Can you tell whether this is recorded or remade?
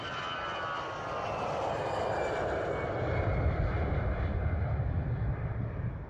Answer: recorded